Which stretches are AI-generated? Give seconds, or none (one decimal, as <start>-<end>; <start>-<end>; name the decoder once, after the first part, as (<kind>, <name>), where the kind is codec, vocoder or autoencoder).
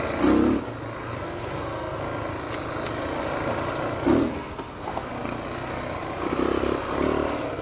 1.0-2.0 (codec, SNAC); 4.2-5.1